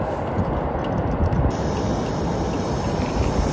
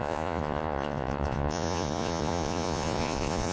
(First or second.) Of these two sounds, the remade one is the second